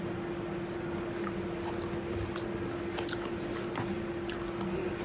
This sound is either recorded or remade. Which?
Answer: recorded